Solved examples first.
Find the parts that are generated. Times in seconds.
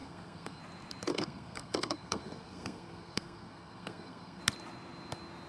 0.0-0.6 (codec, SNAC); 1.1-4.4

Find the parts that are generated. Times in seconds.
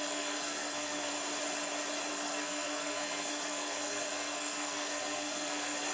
0.0-1.1 (codec, SNAC); 2.1-5.9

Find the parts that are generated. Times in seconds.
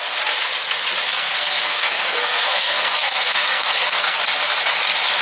1.1-4.2 (codec, SNAC)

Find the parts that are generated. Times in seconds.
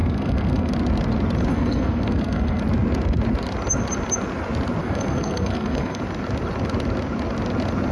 0.0-0.7 (codec, SNAC); 1.5-2.6; 4.8-6.0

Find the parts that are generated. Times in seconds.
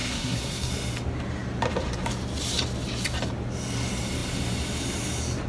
0.0-0.7 (codec, SNAC)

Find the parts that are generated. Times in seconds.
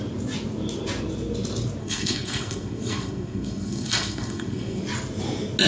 1.8-4.8 (codec, SNAC)